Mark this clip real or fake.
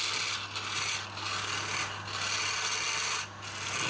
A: real